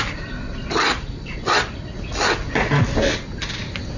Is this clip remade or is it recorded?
recorded